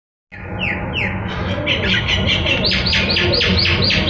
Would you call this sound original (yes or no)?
yes